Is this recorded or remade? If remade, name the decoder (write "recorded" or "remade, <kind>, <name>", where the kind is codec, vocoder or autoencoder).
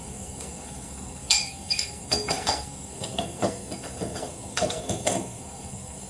remade, codec, SNAC